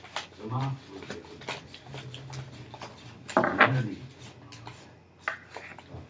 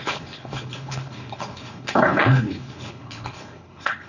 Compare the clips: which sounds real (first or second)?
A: first